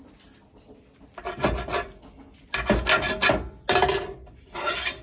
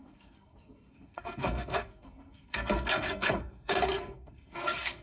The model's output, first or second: second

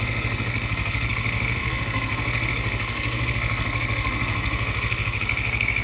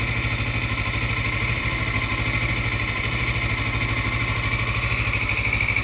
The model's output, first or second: first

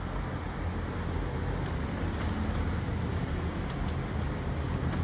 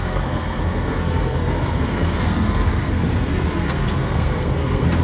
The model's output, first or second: second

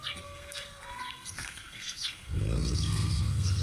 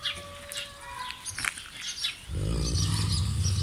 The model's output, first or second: first